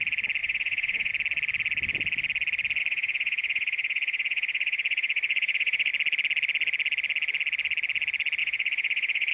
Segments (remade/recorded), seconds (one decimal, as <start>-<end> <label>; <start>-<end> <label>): 0.0-0.4 recorded; 0.4-1.1 remade; 1.1-2.8 recorded; 2.8-5.9 remade; 5.9-8.4 recorded; 8.4-9.3 remade